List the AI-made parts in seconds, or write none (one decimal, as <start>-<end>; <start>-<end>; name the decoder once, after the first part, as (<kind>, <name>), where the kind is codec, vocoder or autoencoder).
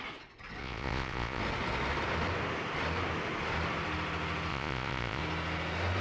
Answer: 0.6-1.4 (vocoder, Vocos); 4.5-5.2